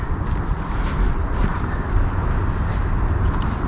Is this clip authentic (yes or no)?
yes